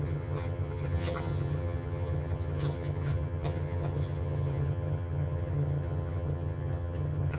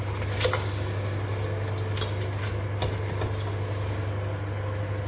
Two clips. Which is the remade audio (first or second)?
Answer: first